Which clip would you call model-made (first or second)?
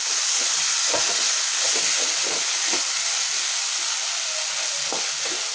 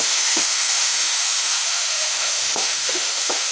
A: second